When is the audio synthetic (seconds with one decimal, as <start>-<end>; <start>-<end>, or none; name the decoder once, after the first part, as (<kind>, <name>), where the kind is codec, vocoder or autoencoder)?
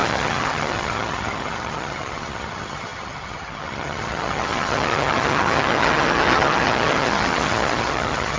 0.0-8.4 (vocoder, HiFi-GAN)